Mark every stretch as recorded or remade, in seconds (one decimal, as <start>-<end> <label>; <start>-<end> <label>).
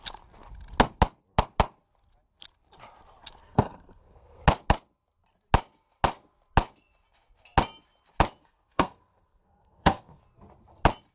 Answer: 0.0-3.4 recorded; 3.4-4.4 remade; 4.4-8.4 recorded; 8.4-10.2 remade; 10.2-11.1 recorded